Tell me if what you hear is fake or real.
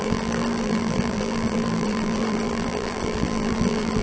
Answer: fake